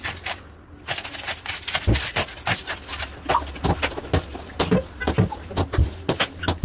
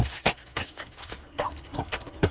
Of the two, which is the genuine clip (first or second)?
first